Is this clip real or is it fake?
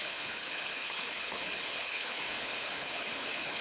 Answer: fake